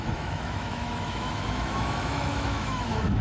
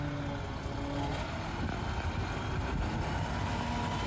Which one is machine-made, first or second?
first